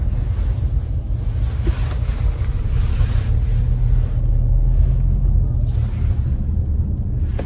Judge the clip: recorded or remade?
recorded